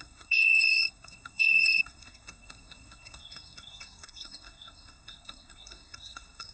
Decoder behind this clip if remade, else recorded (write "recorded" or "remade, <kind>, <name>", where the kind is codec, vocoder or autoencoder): remade, codec, SNAC